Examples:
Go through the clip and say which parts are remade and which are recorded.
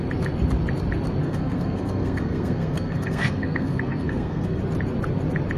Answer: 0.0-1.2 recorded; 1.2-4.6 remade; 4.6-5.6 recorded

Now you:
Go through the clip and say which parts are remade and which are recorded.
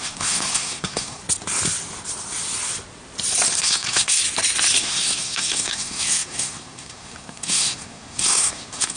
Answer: 0.0-1.2 remade; 1.2-3.6 recorded; 3.6-4.2 remade; 4.2-4.8 recorded; 4.8-9.0 remade